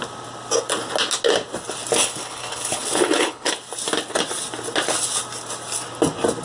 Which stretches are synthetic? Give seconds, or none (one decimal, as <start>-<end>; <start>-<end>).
2.0-3.5